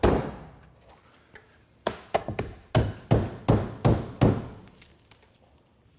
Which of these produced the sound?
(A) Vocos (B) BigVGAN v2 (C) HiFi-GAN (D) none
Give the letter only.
D